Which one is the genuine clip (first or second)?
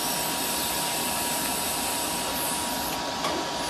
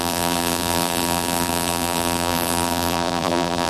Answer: first